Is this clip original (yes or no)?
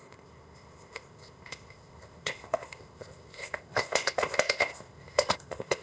no